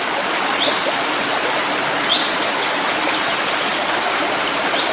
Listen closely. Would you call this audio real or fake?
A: real